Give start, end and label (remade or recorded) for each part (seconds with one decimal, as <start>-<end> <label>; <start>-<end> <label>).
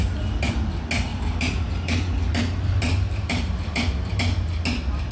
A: 0.0-1.1 recorded; 1.1-4.2 remade; 4.2-5.1 recorded